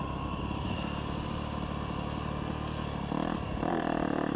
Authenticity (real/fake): real